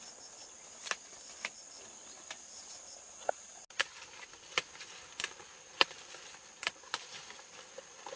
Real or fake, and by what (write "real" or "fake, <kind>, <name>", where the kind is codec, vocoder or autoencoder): real